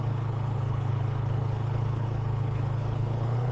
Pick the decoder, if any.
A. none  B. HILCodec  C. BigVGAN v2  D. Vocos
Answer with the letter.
B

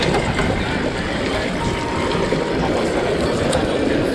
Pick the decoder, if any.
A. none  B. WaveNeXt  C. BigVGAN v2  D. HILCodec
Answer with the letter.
A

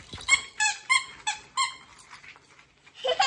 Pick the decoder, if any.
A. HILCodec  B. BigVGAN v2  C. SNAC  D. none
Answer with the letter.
D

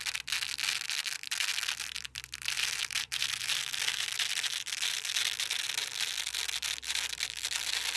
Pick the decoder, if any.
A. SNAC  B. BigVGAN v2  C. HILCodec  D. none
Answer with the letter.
D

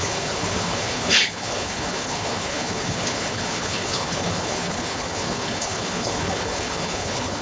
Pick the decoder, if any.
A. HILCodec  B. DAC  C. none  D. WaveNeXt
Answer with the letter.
A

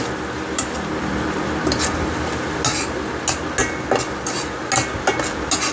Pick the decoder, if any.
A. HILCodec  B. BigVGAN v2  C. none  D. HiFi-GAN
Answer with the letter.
C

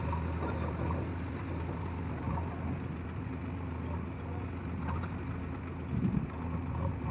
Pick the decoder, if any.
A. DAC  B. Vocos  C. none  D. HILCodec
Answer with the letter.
C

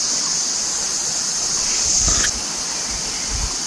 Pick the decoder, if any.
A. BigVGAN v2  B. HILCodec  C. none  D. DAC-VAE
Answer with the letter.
C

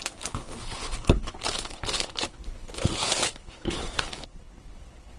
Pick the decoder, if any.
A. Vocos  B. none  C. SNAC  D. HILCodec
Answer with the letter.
D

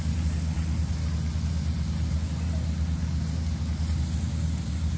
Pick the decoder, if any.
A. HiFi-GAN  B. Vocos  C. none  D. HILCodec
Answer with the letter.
C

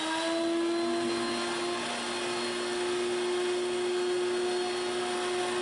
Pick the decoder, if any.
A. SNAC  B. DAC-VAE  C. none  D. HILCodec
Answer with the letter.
C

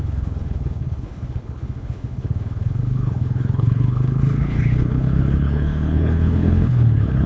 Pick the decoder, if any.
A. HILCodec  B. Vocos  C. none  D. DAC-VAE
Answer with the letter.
A